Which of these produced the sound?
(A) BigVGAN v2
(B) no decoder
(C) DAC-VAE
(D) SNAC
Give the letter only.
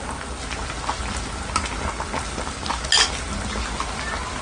B